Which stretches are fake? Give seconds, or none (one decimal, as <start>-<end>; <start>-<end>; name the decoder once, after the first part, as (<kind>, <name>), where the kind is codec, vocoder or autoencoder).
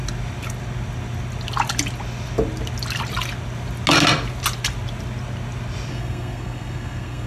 5.9-7.3 (codec, SNAC)